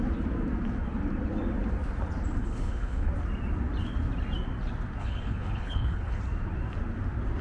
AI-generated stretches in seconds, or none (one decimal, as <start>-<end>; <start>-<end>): 2.4-3.1; 5.0-6.2